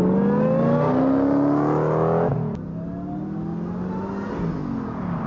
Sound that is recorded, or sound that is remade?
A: recorded